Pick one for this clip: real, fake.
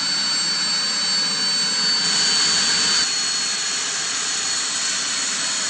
real